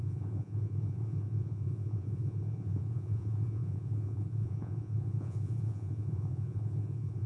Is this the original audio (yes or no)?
no